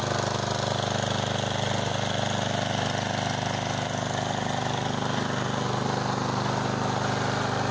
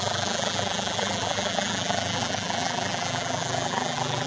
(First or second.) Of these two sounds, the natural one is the first